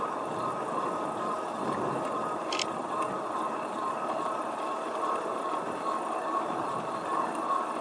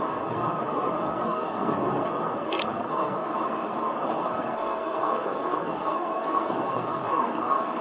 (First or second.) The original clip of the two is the first